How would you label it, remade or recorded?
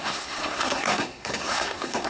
remade